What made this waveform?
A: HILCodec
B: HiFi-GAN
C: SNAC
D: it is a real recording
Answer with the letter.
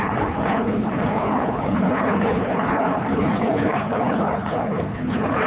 A